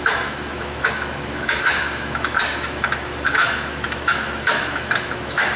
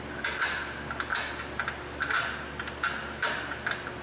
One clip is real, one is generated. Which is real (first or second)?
second